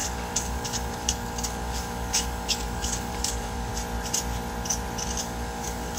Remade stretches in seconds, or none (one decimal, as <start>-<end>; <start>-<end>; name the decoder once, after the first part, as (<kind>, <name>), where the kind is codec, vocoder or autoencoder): 0.0-3.7 (codec, DAC); 5.2-6.0